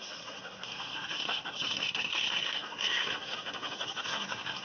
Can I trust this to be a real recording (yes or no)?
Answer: no